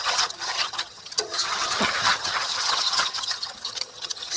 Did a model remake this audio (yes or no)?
yes